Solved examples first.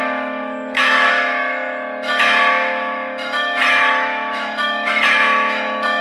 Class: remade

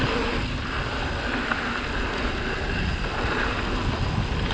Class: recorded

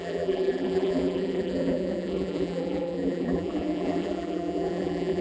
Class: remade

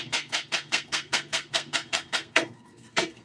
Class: remade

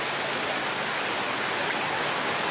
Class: recorded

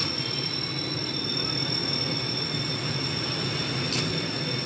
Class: recorded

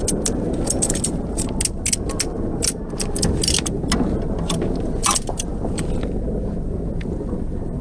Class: recorded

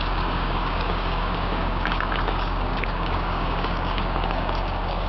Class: remade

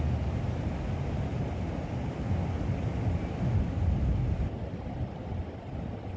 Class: recorded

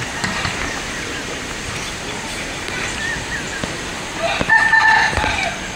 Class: recorded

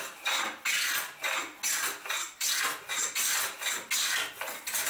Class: recorded